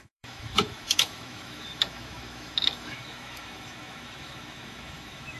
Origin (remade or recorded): remade